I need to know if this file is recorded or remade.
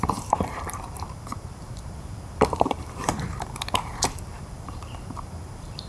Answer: remade